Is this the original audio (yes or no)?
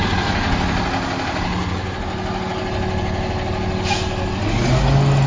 yes